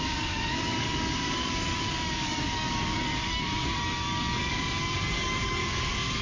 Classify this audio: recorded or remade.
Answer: remade